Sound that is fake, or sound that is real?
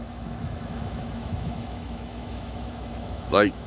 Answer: fake